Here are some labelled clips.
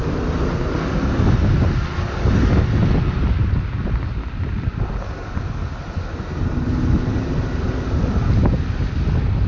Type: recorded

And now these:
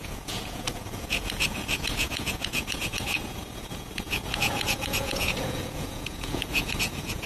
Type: remade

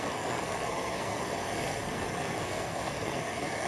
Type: remade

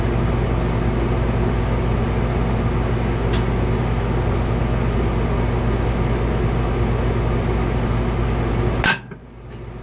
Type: recorded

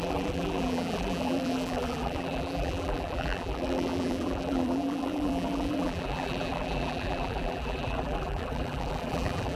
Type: remade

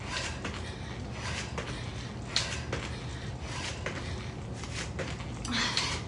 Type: recorded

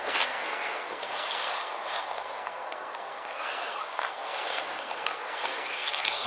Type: remade